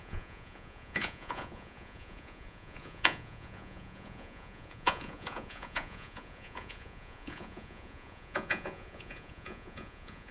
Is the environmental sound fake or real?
fake